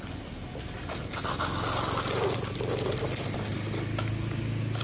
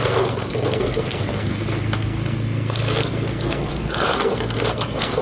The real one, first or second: first